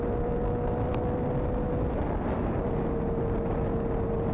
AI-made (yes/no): no